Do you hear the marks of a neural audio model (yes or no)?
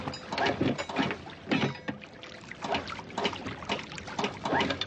no